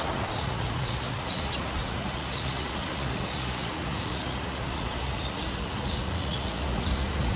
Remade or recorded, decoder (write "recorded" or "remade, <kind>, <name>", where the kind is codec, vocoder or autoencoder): remade, vocoder, Vocos